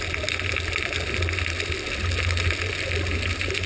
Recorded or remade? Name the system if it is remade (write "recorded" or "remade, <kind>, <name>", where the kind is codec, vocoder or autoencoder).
recorded